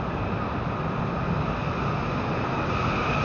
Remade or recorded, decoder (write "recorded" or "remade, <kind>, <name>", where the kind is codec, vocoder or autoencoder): recorded